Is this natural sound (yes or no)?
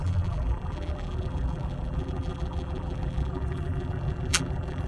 no